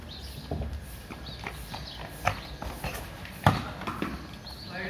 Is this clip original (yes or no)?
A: yes